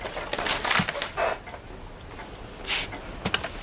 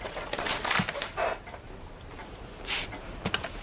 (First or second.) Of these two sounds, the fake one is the second